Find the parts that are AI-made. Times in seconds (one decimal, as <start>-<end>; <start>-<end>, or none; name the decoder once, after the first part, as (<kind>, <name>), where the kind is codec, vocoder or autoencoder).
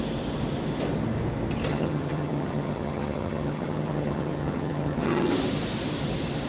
1.7-5.3 (vocoder, HiFi-GAN)